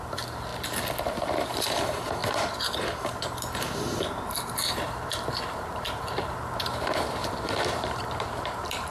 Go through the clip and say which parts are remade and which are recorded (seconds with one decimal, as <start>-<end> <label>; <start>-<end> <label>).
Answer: 0.0-0.5 remade; 0.5-1.2 recorded; 1.2-7.2 remade; 7.2-7.7 recorded; 7.7-8.9 remade